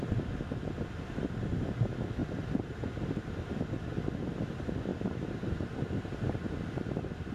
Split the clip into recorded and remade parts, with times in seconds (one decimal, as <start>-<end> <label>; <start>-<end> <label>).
0.0-2.2 recorded; 2.2-3.3 remade; 3.3-4.9 recorded; 4.9-7.3 remade